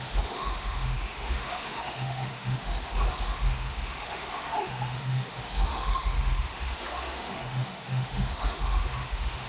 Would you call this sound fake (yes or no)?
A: yes